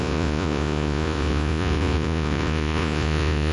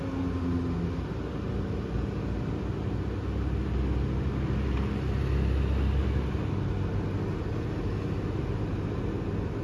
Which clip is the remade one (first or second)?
first